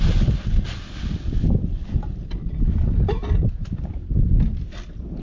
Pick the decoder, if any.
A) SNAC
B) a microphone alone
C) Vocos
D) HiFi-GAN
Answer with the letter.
B